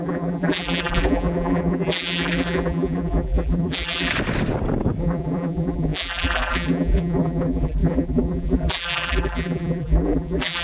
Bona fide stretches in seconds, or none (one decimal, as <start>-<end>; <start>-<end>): 4.1-5.0

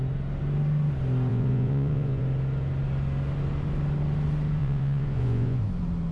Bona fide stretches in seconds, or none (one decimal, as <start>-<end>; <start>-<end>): 0.0-1.3; 2.2-4.6; 5.6-6.1

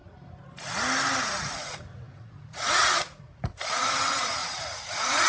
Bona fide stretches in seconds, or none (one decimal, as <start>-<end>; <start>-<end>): 0.0-1.2

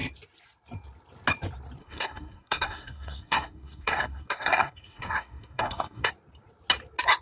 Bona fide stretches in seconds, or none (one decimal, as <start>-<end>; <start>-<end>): 0.0-1.8; 6.1-7.2

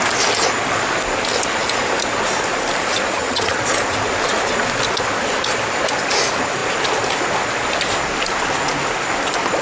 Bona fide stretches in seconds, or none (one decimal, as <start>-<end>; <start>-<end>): 0.0-3.1; 3.6-9.6

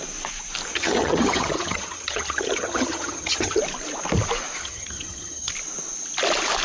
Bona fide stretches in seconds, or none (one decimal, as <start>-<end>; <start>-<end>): 0.0-0.7; 3.6-4.6; 5.5-6.6